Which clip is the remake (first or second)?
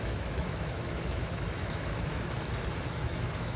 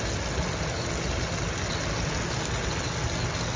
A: first